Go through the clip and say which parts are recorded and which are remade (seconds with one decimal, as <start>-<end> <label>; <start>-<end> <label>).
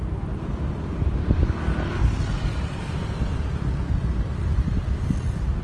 0.0-2.0 remade; 2.0-2.8 recorded; 2.8-4.5 remade; 4.5-5.6 recorded